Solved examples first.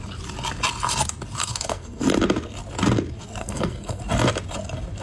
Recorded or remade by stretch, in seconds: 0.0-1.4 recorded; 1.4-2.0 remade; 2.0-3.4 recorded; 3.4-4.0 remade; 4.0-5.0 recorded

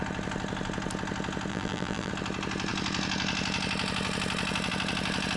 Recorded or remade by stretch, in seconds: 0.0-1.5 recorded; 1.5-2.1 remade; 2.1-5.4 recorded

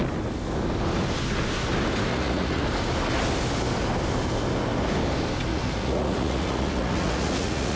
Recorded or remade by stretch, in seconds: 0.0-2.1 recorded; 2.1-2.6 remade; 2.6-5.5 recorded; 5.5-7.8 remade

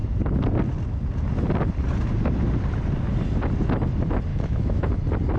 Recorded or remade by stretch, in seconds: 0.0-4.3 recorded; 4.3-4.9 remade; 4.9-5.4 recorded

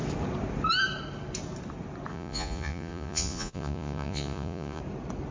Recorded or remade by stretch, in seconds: 0.0-2.1 recorded; 2.1-4.8 remade; 4.8-5.3 recorded

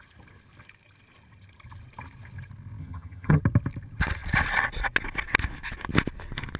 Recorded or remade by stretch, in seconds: 0.0-2.8 recorded; 2.8-3.4 remade; 3.4-6.6 recorded

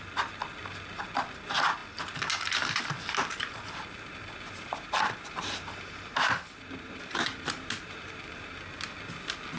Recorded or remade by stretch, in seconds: 0.0-4.7 recorded; 4.7-8.6 remade; 8.6-9.6 recorded